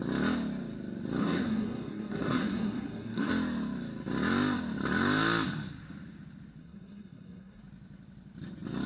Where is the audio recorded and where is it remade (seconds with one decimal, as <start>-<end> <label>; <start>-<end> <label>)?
0.0-1.2 recorded; 1.2-3.3 remade; 3.3-6.6 recorded; 6.6-7.6 remade; 7.6-8.9 recorded